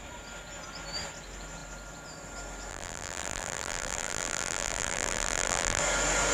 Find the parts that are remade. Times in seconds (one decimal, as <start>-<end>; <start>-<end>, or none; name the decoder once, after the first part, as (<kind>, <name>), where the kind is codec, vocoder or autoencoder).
2.7-5.8 (vocoder, BigVGAN v2)

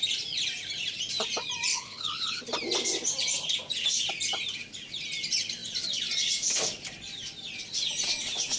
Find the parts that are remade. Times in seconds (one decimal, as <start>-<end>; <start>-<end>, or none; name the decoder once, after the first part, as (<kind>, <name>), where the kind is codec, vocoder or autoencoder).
1.7-2.4 (codec, HILCodec)

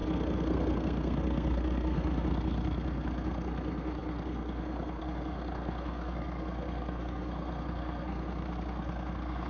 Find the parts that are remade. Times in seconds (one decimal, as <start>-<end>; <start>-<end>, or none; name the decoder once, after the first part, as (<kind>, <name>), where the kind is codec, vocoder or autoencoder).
0.0-9.5 (codec, SNAC)

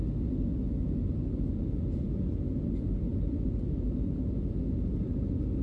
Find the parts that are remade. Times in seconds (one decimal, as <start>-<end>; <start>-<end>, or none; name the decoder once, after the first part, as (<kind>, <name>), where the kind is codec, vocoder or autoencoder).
none

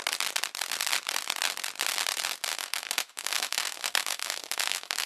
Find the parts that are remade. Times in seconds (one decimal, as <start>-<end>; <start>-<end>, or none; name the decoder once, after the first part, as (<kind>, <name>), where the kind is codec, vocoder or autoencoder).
2.5-5.1 (autoencoder, DAC-VAE)